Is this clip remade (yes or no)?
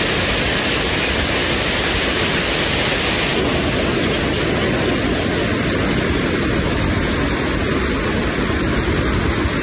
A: no